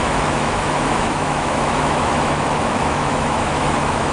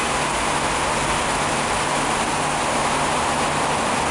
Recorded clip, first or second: second